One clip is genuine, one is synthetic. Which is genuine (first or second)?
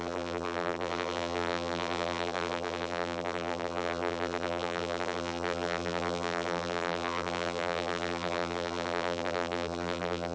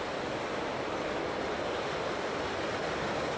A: second